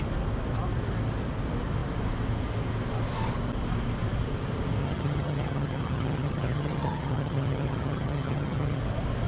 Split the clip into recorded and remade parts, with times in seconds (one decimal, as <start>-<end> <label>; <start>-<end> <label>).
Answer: 0.0-4.8 recorded; 4.8-8.8 remade; 8.8-9.3 recorded

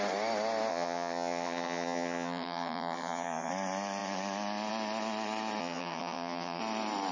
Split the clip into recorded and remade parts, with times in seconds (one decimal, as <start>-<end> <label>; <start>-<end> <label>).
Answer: 0.0-0.7 recorded; 0.7-3.5 remade; 3.5-5.6 recorded; 5.6-6.6 remade; 6.6-7.1 recorded

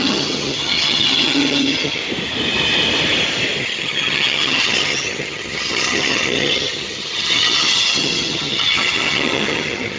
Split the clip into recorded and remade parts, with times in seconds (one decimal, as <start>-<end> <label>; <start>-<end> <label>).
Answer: 0.0-2.0 remade; 2.0-3.6 recorded; 3.6-10.0 remade

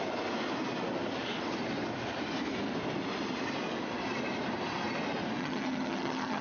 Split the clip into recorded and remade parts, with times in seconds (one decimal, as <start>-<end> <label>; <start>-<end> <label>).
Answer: 0.0-5.4 recorded; 5.4-6.4 remade